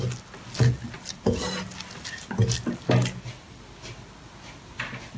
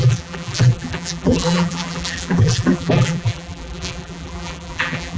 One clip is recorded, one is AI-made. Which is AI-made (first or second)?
second